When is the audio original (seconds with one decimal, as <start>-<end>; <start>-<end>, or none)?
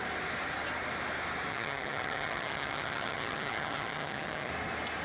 0.0-1.5; 4.5-5.0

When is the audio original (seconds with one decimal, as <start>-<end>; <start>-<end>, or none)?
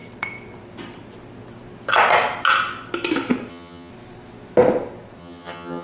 0.0-3.5; 3.9-5.2